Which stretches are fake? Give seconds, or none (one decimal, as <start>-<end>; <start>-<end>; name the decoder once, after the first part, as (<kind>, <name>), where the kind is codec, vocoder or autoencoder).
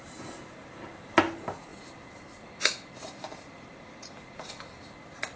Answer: 1.7-4.9 (vocoder, BigVGAN v2)